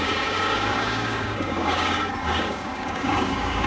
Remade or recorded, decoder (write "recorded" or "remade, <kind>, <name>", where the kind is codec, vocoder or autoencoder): remade, codec, DAC